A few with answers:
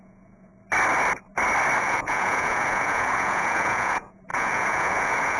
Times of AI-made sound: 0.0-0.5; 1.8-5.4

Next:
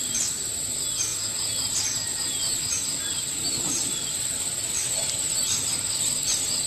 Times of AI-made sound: 1.1-1.7; 2.1-2.6

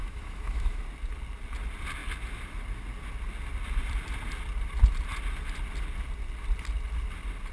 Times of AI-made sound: 0.0-0.8

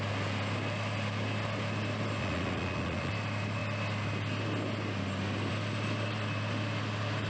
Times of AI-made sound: 2.2-3.1

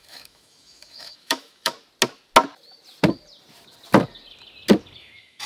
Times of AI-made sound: 0.0-1.7; 5.0-5.5